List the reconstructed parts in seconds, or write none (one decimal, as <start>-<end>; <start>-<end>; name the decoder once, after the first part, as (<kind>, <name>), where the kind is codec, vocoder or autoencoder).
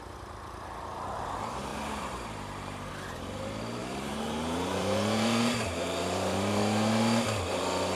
1.7-2.9 (vocoder, BigVGAN v2); 3.8-6.6